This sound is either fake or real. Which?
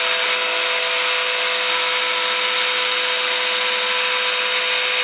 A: real